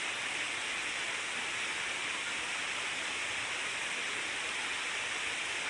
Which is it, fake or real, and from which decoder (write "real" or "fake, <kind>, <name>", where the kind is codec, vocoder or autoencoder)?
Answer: real